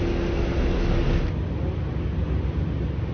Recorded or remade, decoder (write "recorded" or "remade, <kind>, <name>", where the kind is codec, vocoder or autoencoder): recorded